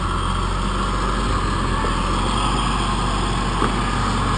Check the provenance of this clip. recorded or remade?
recorded